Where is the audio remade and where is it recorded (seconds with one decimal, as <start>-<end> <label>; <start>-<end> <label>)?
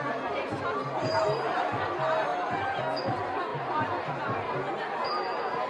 0.0-0.8 recorded; 0.8-1.9 remade; 1.9-2.3 recorded; 2.3-2.8 remade; 2.8-3.5 recorded; 3.5-4.7 remade; 4.7-5.7 recorded